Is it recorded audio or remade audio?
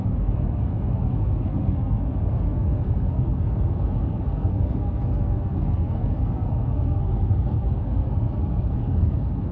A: remade